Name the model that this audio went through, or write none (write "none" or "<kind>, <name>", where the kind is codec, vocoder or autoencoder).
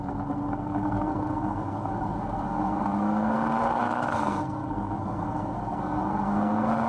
codec, SNAC